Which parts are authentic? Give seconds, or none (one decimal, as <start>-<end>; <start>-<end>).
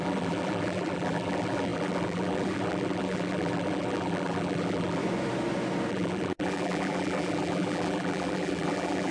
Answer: 5.0-5.9